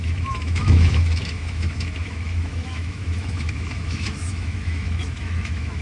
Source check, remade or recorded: remade